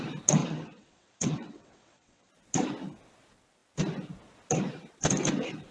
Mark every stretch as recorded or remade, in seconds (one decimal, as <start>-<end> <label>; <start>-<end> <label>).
0.0-0.4 recorded; 0.4-2.3 remade; 2.3-5.7 recorded